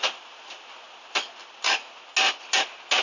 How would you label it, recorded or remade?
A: recorded